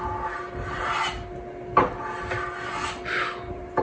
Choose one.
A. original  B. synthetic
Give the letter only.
A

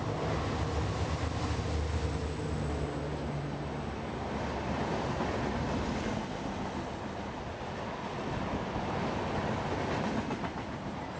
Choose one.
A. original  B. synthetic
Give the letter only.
A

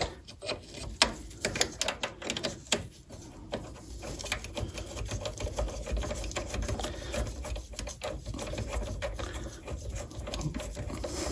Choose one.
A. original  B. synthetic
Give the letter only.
A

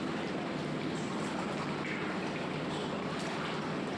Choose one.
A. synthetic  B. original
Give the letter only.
B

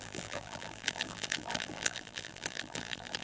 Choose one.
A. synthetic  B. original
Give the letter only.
A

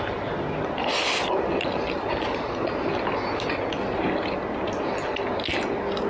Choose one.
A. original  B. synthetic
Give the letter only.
A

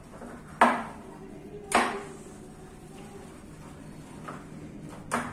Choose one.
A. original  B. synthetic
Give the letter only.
A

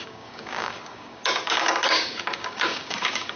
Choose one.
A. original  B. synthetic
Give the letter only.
B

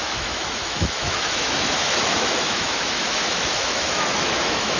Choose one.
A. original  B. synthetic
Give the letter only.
B